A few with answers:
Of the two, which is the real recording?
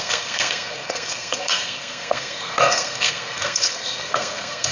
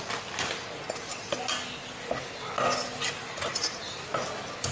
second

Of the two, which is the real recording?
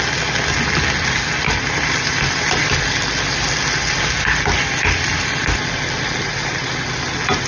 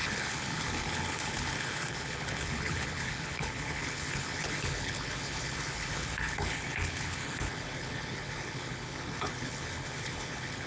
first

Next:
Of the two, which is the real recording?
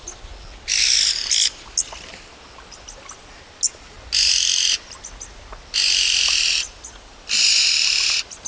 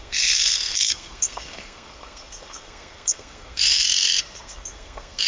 first